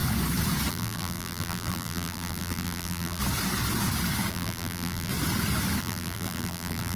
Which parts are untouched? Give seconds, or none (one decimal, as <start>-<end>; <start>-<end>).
0.0-0.7; 3.2-4.3; 5.1-5.8